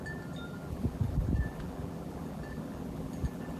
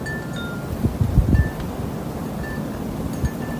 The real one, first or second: second